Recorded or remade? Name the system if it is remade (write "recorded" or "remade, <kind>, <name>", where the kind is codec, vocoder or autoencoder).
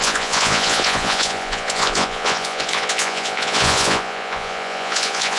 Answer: remade, vocoder, Vocos